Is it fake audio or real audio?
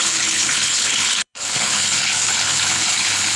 fake